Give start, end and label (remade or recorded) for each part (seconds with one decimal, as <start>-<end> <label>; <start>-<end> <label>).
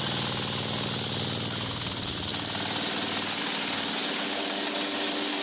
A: 0.0-5.4 recorded